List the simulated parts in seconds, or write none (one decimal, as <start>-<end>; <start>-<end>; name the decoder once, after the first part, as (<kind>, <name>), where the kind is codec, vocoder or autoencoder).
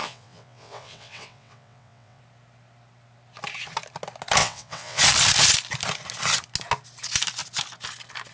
0.0-2.2 (vocoder, WaveNeXt); 4.4-5.0